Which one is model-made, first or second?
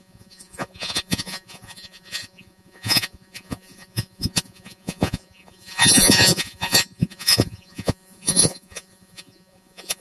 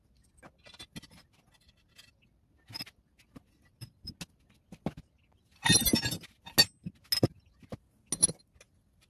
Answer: first